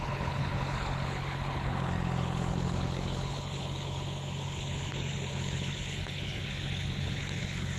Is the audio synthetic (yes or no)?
yes